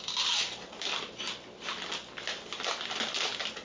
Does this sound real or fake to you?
real